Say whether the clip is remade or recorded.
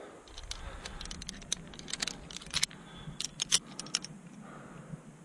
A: recorded